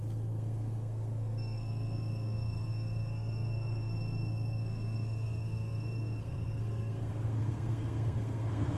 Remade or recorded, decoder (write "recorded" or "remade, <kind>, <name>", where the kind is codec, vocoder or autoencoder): remade, codec, SNAC